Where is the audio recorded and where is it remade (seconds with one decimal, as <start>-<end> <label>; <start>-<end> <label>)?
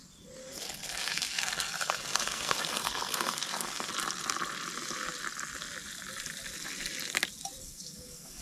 0.0-0.4 recorded; 0.4-3.9 remade; 3.9-7.6 recorded; 7.6-8.4 remade